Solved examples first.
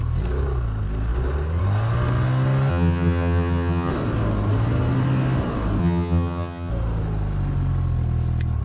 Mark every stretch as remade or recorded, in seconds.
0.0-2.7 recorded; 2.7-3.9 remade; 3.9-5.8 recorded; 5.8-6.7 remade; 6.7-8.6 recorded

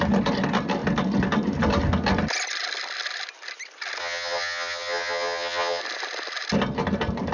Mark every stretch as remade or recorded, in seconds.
0.0-4.0 recorded; 4.0-5.8 remade; 5.8-7.3 recorded

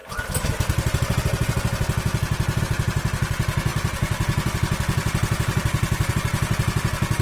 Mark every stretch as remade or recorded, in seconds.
0.0-3.7 recorded; 3.7-6.1 remade; 6.1-7.2 recorded

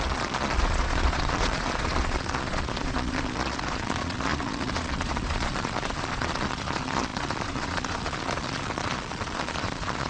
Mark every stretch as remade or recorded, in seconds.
0.0-10.1 remade

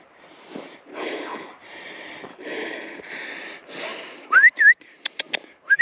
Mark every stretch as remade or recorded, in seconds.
0.0-0.9 recorded; 0.9-1.5 remade; 1.5-2.3 recorded; 2.3-3.0 remade; 3.0-5.8 recorded